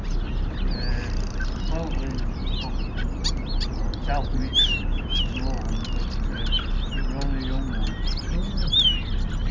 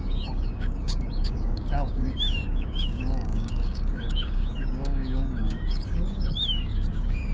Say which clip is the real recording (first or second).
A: first